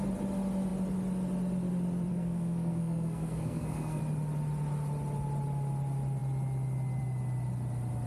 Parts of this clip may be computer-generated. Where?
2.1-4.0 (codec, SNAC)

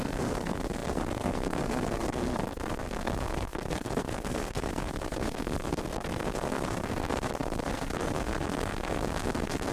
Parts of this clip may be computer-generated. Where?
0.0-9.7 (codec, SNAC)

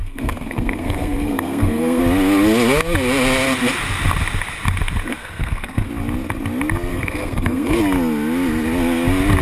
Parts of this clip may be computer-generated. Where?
0.0-2.0 (codec, SNAC); 5.2-5.9; 6.9-7.8

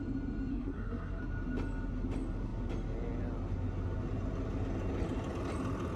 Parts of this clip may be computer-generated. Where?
0.5-1.2 (codec, SNAC)

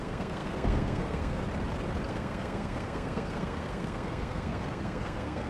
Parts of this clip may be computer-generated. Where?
0.0-1.4 (codec, SNAC); 2.1-5.5

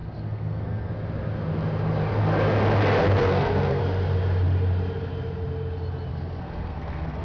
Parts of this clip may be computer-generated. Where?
0.0-0.9 (codec, SNAC); 3.0-3.8; 6.1-7.2